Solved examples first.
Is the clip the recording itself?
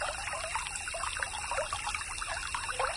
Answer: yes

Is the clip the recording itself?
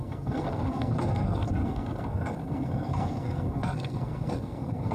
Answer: no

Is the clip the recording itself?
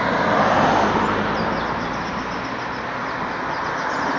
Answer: yes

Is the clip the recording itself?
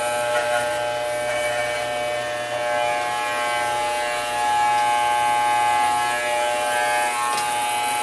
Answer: yes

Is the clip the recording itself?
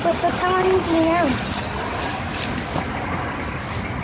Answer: yes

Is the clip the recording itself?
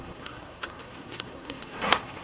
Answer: no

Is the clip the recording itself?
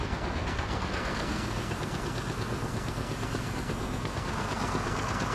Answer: no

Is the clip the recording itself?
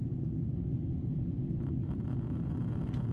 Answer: yes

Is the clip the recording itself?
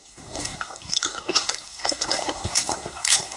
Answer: no